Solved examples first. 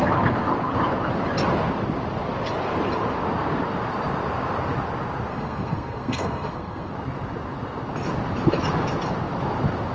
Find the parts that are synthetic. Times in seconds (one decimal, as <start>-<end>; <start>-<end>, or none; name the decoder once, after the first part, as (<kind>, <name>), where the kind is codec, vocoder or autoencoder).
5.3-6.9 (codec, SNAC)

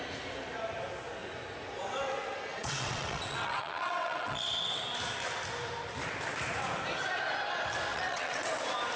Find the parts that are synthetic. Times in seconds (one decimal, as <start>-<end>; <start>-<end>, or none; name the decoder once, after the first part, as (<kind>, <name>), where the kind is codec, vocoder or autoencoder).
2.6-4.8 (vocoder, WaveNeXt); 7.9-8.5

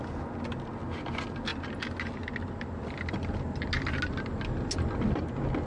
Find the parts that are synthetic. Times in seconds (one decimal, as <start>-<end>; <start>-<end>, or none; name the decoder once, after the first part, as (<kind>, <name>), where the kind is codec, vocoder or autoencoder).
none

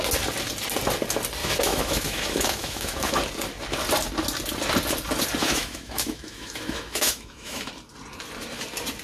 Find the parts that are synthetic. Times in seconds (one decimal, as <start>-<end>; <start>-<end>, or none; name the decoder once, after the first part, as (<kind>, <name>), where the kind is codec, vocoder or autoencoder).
1.4-3.2 (autoencoder, DAC-VAE); 5.4-7.7

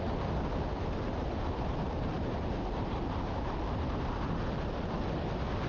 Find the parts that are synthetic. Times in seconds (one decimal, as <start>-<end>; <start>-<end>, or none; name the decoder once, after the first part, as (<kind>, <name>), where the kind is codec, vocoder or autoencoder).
2.6-3.4 (vocoder, BigVGAN v2)

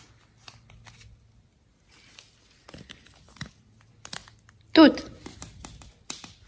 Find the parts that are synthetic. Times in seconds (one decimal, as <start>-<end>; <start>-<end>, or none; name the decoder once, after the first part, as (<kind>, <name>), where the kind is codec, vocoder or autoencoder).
none